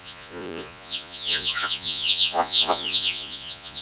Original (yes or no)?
no